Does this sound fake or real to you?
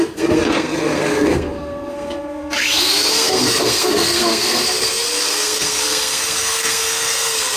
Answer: fake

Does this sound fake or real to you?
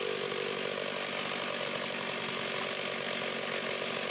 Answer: real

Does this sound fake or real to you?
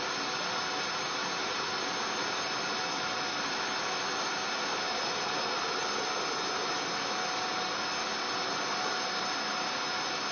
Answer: real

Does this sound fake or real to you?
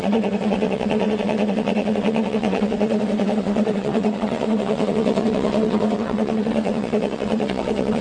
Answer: fake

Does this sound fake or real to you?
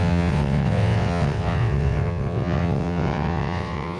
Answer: fake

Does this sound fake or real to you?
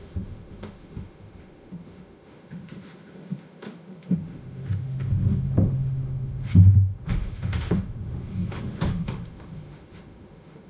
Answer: fake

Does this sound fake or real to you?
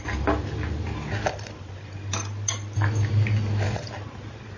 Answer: real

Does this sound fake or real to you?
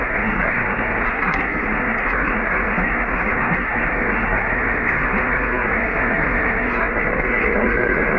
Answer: fake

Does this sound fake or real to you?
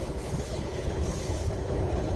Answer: fake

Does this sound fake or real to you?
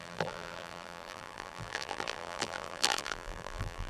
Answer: fake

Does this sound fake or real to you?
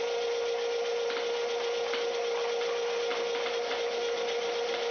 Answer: real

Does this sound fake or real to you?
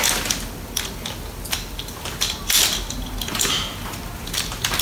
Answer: real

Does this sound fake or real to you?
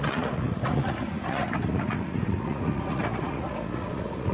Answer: fake